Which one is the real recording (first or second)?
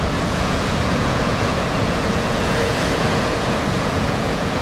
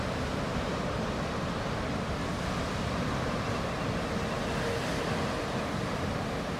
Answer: second